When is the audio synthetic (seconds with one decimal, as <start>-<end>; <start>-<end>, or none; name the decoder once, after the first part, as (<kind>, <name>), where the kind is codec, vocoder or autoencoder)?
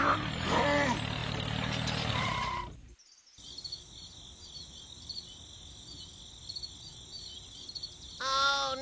none